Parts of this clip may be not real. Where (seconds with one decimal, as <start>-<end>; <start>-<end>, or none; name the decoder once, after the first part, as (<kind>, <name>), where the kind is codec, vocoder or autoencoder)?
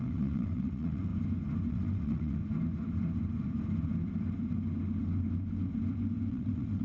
0.0-1.1 (vocoder, WaveNeXt); 1.7-2.4; 6.3-6.8